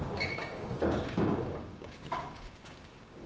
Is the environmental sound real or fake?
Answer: fake